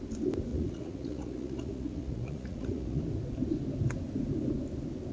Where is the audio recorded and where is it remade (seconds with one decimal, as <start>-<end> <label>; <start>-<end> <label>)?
0.0-0.5 recorded; 0.5-3.0 remade; 3.0-5.1 recorded